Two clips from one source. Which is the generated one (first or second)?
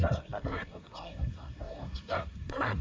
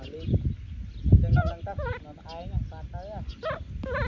first